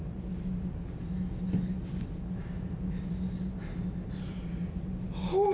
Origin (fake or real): real